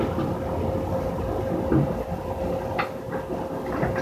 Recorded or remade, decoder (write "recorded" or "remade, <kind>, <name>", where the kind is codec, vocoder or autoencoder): recorded